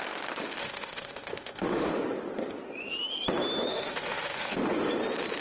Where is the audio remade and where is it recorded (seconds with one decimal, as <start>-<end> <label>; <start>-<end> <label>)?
0.0-0.6 recorded; 0.6-1.9 remade; 1.9-3.7 recorded; 3.7-4.6 remade; 4.6-5.4 recorded